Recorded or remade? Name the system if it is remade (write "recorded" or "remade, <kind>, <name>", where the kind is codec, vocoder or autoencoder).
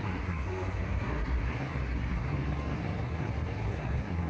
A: remade, codec, SNAC